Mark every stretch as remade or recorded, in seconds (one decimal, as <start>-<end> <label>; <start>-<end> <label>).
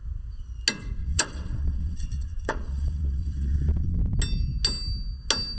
0.0-1.0 recorded; 1.0-4.0 remade; 4.0-5.6 recorded